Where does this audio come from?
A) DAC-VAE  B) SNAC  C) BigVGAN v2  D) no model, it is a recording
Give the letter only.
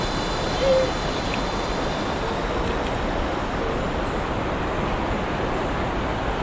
D